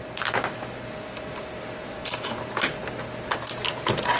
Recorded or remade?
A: recorded